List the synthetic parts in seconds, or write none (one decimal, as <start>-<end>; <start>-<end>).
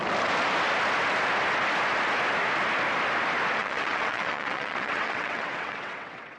3.6-6.4